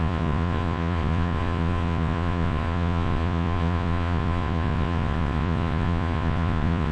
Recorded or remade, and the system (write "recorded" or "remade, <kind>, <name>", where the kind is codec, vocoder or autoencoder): remade, vocoder, Vocos